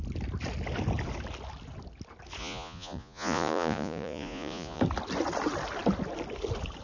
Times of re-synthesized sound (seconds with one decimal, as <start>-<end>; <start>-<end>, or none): 2.4-4.8